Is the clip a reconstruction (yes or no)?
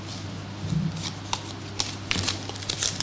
yes